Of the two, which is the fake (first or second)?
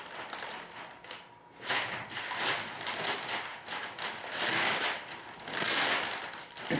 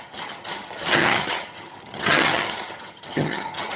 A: second